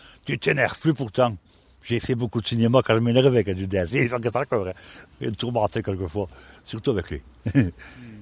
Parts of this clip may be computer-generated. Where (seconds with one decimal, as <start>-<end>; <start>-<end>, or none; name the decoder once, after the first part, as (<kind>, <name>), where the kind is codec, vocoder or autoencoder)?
4.3-5.0 (vocoder, Vocos)